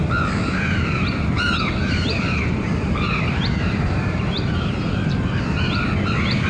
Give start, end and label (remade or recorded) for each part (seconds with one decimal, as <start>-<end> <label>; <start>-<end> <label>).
0.0-1.8 recorded; 1.8-5.7 remade; 5.7-6.5 recorded